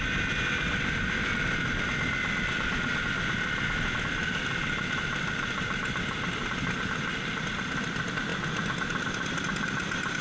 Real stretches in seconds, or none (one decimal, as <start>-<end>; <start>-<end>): 0.0-10.2